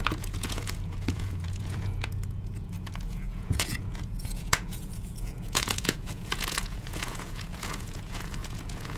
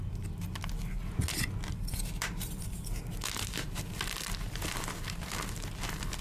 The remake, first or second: first